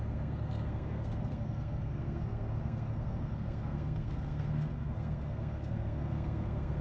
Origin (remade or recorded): remade